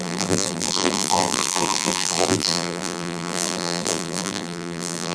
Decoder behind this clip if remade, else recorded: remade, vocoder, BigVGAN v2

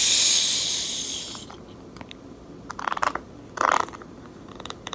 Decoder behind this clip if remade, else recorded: recorded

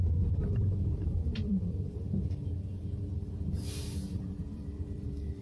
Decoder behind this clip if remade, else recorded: remade, vocoder, BigVGAN v2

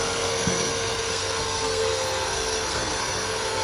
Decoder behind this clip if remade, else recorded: remade, codec, SNAC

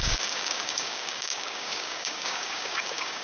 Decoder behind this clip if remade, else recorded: remade, codec, DAC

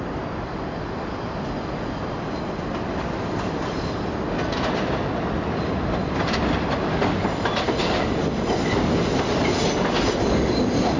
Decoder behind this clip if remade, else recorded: recorded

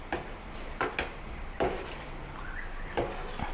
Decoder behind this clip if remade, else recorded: recorded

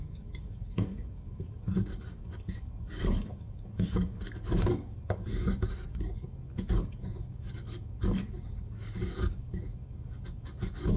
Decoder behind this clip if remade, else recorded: remade, codec, DAC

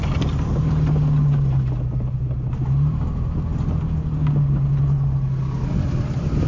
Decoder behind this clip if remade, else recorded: recorded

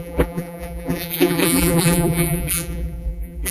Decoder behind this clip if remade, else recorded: remade, vocoder, BigVGAN v2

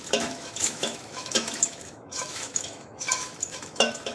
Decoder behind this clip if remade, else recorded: remade, autoencoder, DAC-VAE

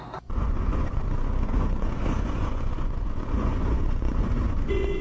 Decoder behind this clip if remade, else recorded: remade, vocoder, Vocos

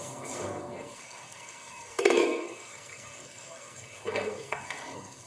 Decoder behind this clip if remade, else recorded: remade, codec, SNAC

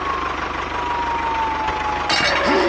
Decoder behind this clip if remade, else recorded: recorded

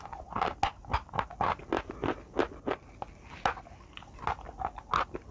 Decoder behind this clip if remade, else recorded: recorded